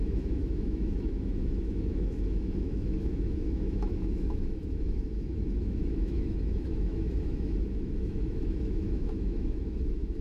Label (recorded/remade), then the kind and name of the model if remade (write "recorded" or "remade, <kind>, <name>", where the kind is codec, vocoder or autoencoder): remade, autoencoder, DAC-VAE